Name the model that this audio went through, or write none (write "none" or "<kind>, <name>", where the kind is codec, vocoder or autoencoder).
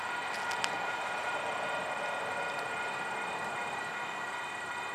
none